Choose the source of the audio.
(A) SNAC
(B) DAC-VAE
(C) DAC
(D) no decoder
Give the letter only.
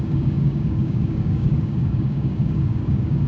C